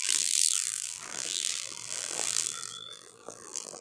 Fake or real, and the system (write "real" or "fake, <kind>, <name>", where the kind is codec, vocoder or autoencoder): fake, vocoder, BigVGAN v2